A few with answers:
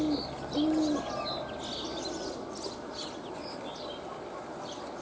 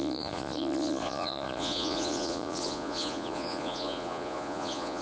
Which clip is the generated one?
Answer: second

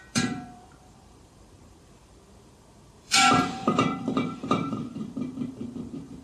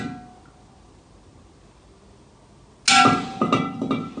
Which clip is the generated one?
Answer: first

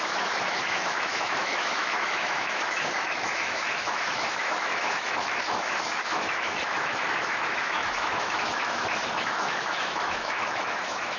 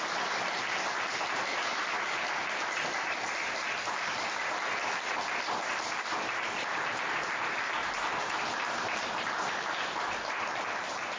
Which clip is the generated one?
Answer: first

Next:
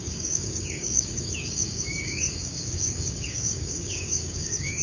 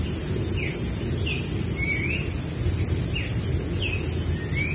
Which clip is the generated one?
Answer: first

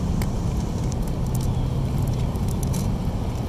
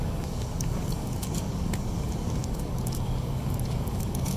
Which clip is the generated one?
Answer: second